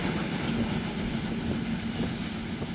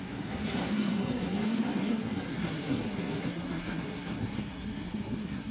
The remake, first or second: second